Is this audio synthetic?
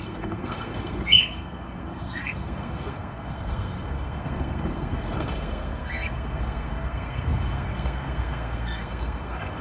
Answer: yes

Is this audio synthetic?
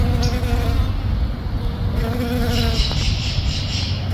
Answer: no